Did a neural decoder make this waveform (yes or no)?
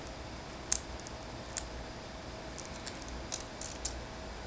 no